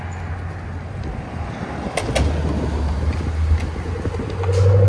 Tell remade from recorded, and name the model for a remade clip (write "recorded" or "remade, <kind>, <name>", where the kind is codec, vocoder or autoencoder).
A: recorded